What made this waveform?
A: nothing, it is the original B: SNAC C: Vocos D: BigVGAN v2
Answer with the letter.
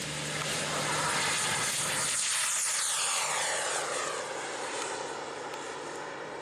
A